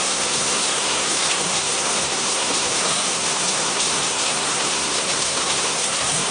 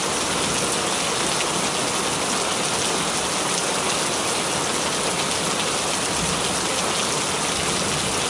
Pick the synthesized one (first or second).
first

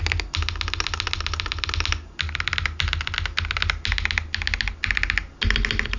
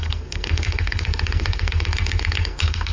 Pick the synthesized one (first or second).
second